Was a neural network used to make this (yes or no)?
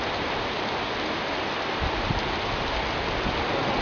no